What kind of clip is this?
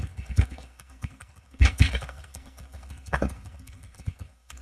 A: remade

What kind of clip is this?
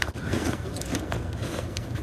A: remade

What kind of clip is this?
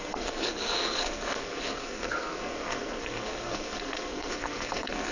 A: remade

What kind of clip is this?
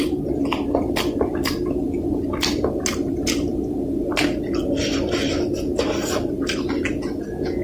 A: recorded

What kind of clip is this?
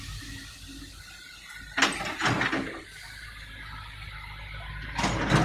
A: recorded